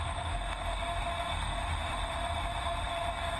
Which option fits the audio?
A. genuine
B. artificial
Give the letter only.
B